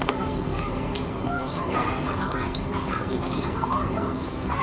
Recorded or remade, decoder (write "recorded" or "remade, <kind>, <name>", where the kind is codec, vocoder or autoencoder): remade, codec, SNAC